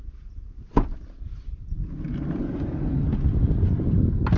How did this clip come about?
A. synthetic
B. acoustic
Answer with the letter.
B